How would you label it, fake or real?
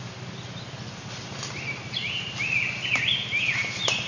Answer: real